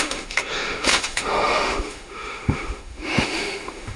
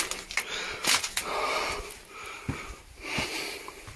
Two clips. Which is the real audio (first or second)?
second